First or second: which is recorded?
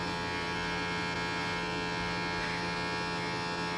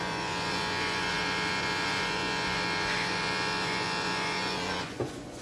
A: first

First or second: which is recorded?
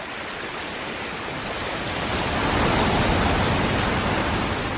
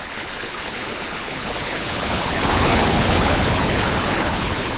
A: first